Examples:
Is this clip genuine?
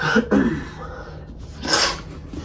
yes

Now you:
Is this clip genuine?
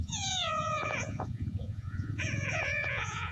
no